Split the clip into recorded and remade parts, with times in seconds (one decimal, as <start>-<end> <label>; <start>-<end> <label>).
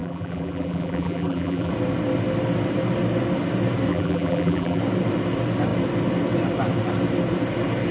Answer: 0.0-1.7 remade; 1.7-3.9 recorded; 3.9-4.8 remade; 4.8-7.9 recorded